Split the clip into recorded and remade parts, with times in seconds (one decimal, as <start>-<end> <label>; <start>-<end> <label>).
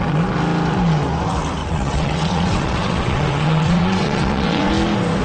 0.0-1.6 recorded; 1.6-4.7 remade; 4.7-5.2 recorded